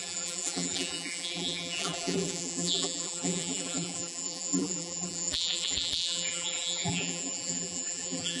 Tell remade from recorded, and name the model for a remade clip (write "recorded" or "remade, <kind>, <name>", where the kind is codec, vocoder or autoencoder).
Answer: remade, vocoder, BigVGAN v2